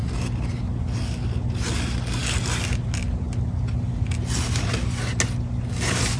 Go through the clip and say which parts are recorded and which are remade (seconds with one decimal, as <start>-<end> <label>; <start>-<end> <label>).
0.0-6.2 recorded